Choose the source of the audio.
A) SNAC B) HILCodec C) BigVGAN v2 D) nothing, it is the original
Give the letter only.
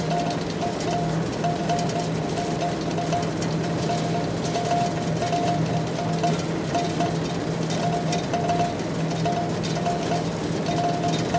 D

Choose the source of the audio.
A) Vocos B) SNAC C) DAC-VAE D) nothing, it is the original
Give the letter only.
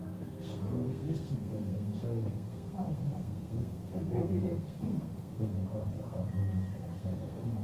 B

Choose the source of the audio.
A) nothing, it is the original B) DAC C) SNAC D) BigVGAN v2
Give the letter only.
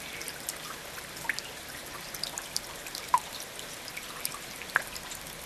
A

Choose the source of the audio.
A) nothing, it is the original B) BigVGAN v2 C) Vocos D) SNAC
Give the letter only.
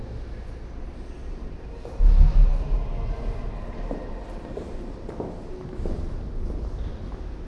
A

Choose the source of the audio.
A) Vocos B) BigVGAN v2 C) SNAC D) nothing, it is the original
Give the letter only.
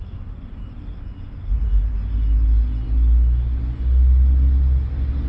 D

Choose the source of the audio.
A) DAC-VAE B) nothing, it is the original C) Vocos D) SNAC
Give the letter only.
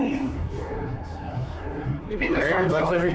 D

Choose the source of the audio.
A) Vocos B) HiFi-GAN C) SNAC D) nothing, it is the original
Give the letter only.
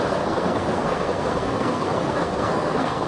C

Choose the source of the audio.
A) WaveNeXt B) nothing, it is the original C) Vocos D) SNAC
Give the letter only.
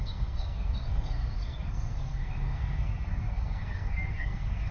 D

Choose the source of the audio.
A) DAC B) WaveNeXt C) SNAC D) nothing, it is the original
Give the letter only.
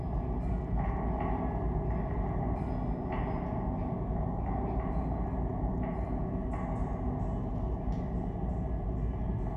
D